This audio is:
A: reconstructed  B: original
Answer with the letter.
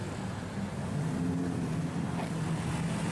B